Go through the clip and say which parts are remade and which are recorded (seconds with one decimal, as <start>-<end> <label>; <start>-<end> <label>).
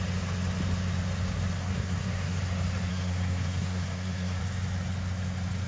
0.0-1.6 recorded; 1.6-2.4 remade; 2.4-2.9 recorded; 2.9-4.4 remade; 4.4-5.7 recorded